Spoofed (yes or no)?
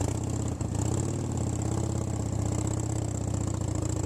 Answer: no